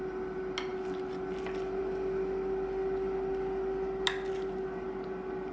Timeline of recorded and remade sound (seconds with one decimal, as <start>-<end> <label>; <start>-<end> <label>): 0.0-5.5 recorded